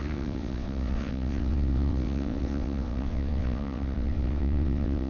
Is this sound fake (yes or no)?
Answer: yes